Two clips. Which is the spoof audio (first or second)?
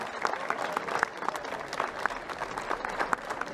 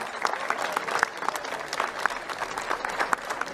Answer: first